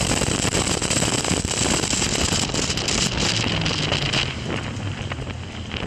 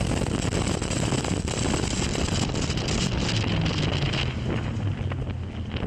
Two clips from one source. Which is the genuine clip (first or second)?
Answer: second